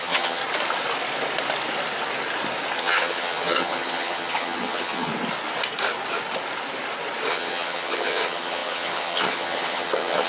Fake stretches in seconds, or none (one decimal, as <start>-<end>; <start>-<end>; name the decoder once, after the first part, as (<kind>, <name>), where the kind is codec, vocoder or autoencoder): 0.0-0.4 (vocoder, HiFi-GAN); 2.8-5.1; 7.3-10.3